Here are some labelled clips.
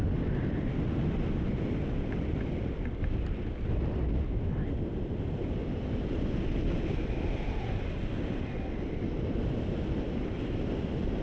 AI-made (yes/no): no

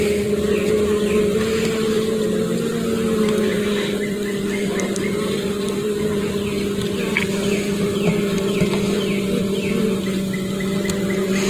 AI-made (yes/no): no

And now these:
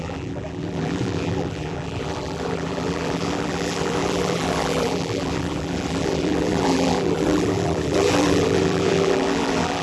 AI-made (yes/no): yes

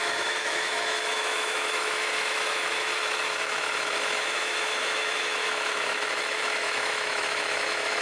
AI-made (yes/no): yes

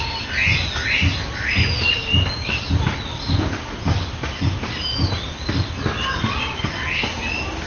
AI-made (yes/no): no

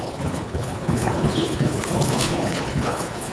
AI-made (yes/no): yes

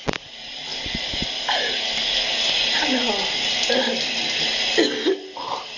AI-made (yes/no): no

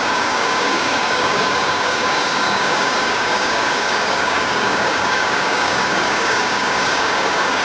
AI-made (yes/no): yes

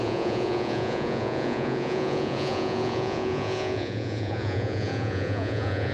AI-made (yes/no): yes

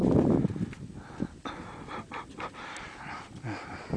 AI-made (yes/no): no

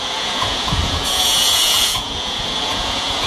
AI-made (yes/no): yes